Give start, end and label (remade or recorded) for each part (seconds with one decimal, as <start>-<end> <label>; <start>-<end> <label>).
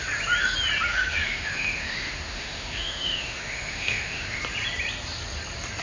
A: 0.0-0.9 recorded; 0.9-4.4 remade; 4.4-5.8 recorded